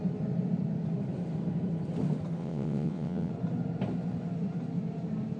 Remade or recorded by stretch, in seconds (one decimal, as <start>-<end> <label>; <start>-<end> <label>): 0.0-2.4 recorded; 2.4-3.3 remade; 3.3-5.4 recorded